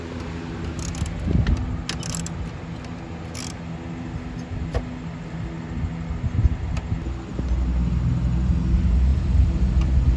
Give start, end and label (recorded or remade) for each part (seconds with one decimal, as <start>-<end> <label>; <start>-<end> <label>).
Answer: 0.0-9.1 recorded; 9.1-10.2 remade